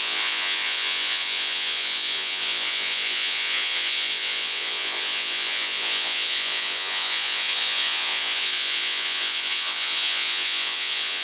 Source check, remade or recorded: remade